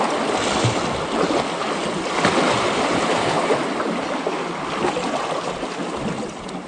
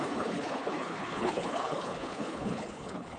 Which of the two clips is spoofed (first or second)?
second